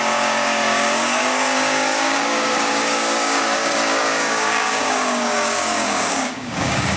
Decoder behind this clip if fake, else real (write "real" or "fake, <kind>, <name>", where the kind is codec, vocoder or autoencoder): fake, codec, DAC